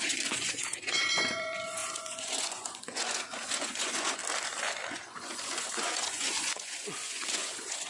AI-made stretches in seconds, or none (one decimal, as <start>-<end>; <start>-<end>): 0.0-4.2; 4.9-7.9